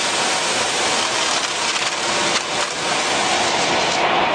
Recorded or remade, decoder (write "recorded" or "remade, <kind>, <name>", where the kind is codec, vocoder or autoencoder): recorded